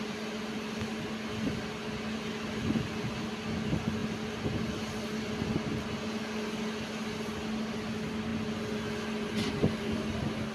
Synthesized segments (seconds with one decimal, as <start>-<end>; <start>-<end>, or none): none